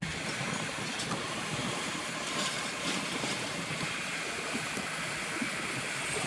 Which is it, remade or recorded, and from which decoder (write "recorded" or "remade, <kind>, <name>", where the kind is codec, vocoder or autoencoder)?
recorded